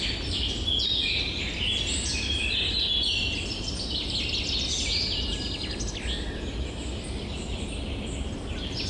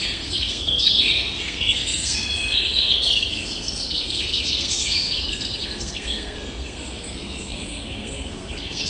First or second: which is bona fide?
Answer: first